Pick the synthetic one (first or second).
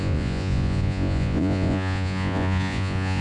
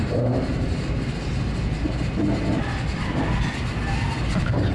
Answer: first